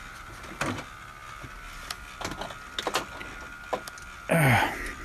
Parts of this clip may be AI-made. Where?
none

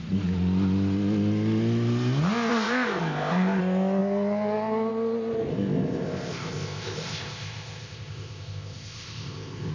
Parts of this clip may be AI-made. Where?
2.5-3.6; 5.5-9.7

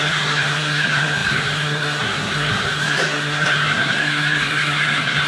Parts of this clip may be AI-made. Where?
0.0-5.3

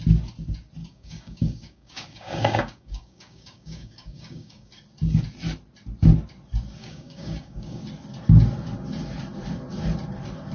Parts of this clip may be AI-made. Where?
0.8-4.7; 6.8-7.8